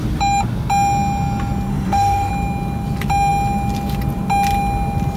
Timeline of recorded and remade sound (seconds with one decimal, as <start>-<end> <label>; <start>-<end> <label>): 0.0-1.7 recorded; 1.7-2.3 remade; 2.3-5.2 recorded